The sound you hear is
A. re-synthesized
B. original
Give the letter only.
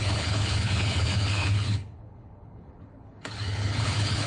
A